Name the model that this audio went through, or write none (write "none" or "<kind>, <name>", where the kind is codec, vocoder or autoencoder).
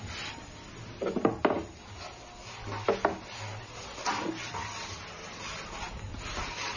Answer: none